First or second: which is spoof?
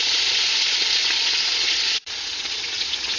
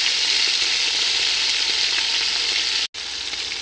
first